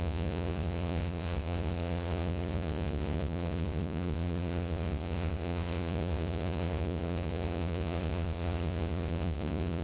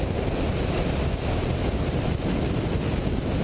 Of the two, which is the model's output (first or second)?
first